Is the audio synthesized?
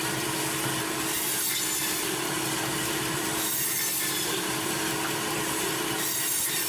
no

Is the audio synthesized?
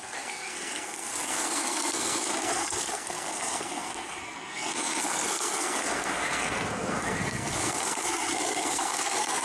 yes